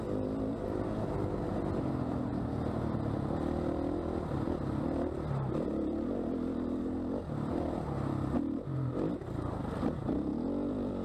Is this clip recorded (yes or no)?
yes